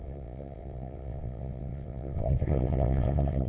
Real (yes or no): no